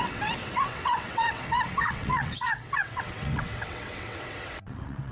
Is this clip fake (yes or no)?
yes